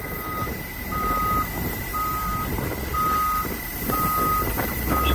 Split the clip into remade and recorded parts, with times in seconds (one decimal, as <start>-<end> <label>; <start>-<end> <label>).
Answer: 0.0-1.9 recorded; 1.9-3.1 remade; 3.1-5.1 recorded

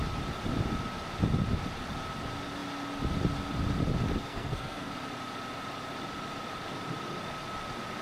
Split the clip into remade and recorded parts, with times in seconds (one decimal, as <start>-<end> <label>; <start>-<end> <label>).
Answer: 0.0-4.2 recorded; 4.2-4.9 remade; 4.9-8.0 recorded

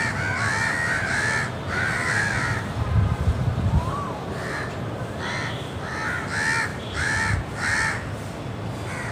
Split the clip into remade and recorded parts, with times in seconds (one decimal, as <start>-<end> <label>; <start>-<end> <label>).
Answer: 0.0-6.7 recorded; 6.7-7.5 remade; 7.5-9.1 recorded

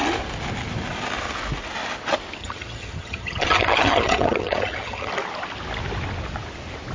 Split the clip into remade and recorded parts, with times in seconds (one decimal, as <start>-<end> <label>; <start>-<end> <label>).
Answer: 0.0-2.4 recorded; 2.4-5.1 remade; 5.1-6.9 recorded

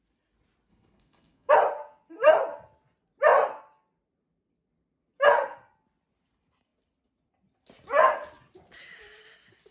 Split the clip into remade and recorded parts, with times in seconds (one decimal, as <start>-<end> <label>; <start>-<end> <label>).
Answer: 0.0-0.7 recorded; 0.7-1.5 remade; 1.5-9.7 recorded

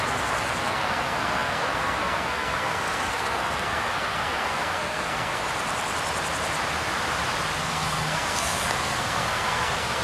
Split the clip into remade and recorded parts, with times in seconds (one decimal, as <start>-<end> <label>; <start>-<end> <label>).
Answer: 0.0-5.4 remade; 5.4-7.6 recorded; 7.6-10.0 remade

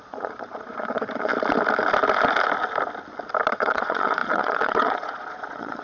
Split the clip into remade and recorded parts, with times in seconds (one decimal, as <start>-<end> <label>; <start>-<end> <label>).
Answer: 0.0-1.3 remade; 1.3-3.5 recorded; 3.5-5.8 remade